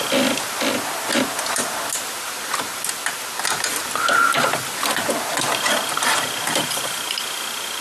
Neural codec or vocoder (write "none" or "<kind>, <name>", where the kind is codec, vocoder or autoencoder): none